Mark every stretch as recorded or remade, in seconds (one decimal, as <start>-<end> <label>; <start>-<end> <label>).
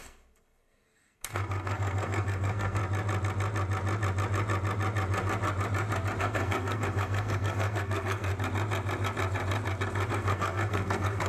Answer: 0.0-2.8 remade; 2.8-6.2 recorded; 6.2-8.3 remade; 8.3-10.1 recorded; 10.1-11.3 remade